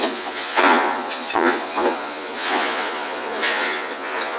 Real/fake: fake